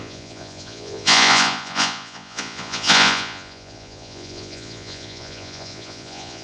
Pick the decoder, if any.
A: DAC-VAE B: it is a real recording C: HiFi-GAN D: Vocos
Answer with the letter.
D